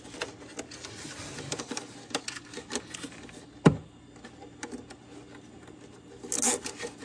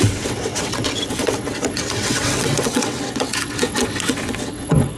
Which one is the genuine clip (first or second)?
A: first